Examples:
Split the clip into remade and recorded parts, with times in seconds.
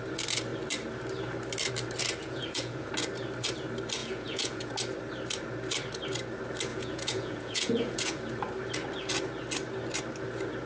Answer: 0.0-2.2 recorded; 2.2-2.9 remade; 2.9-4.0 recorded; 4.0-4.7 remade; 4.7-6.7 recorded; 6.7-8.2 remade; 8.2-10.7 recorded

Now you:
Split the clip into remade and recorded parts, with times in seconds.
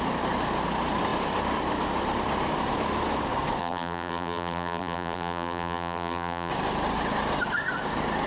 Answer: 0.0-3.6 recorded; 3.6-6.5 remade; 6.5-8.3 recorded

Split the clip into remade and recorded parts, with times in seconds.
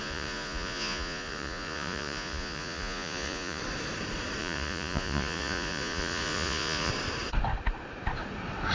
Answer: 0.0-3.6 remade; 3.6-4.4 recorded; 4.4-6.9 remade; 6.9-8.7 recorded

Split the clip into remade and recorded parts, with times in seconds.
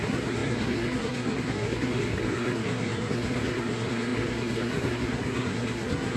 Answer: 0.0-6.2 remade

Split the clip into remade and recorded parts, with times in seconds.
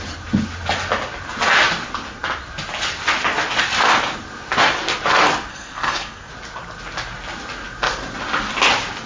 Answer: 0.0-5.5 recorded; 5.5-6.3 remade; 6.3-9.1 recorded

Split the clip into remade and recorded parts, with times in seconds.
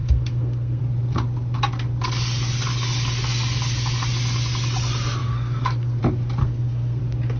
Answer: 0.0-0.8 remade; 0.8-5.2 recorded; 5.2-6.0 remade; 6.0-6.4 recorded; 6.4-7.0 remade; 7.0-7.4 recorded